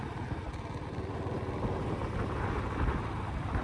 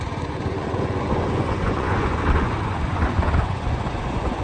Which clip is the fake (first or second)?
second